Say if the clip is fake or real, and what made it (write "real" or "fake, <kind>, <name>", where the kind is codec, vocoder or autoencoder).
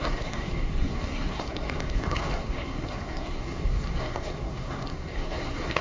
fake, codec, SNAC